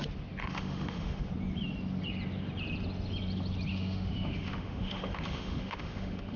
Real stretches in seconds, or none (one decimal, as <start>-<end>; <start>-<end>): 0.0-0.4; 1.3-3.7